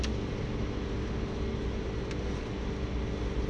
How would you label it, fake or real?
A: real